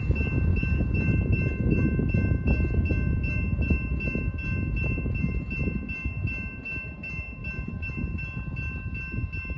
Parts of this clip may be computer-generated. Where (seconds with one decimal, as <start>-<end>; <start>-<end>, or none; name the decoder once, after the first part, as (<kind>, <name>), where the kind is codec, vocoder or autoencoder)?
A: none